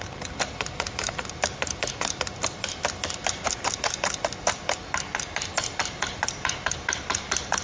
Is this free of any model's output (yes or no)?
no